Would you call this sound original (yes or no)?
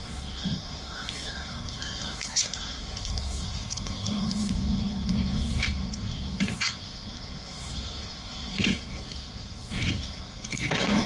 no